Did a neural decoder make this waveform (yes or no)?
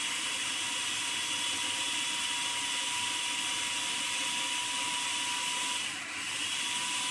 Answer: no